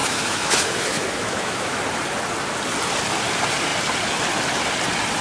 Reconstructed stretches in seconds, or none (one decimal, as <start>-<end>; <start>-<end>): 0.0-1.8